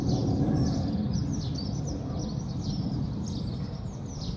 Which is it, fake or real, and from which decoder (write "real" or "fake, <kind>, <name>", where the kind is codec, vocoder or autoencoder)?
real